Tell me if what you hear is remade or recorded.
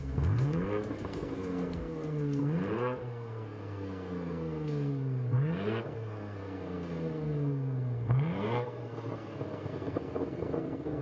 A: remade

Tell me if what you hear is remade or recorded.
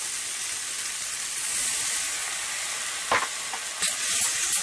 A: recorded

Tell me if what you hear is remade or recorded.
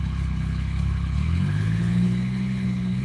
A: remade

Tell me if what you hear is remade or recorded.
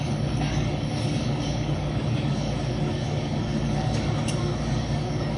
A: remade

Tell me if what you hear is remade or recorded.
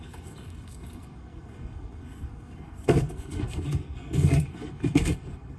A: remade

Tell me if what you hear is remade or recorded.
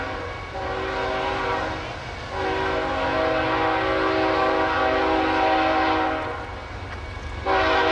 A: recorded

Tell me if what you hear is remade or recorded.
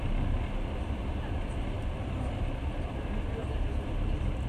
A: recorded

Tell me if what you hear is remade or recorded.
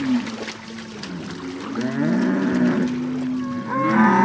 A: recorded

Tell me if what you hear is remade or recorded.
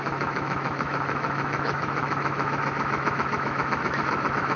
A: remade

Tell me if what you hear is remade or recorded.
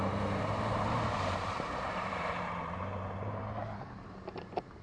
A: remade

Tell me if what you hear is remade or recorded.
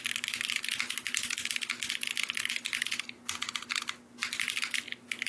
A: recorded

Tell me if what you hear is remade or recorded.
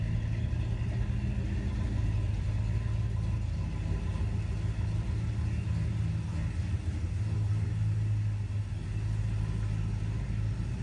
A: recorded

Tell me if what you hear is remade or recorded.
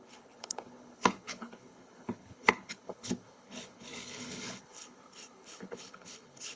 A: remade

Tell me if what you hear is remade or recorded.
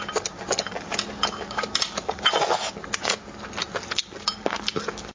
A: recorded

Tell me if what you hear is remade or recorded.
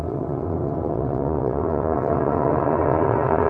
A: remade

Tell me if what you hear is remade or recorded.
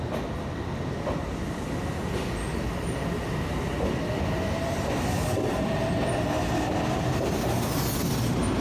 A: recorded